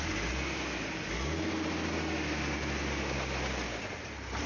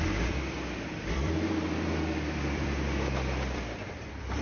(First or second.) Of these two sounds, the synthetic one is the second